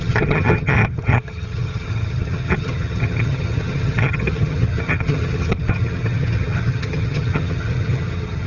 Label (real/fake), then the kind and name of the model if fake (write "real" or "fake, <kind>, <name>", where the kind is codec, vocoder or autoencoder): fake, vocoder, HiFi-GAN